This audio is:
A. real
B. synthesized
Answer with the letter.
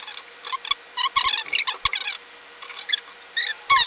A